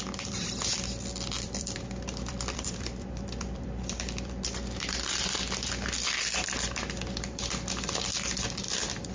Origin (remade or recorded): remade